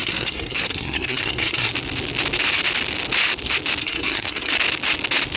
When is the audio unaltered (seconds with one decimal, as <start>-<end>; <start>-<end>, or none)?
1.7-3.8; 4.5-5.4

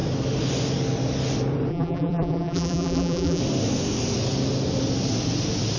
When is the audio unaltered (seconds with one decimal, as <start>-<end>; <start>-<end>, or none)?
0.0-1.7; 3.4-5.8